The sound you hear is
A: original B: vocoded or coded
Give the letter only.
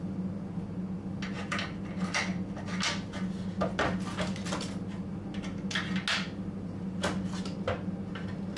A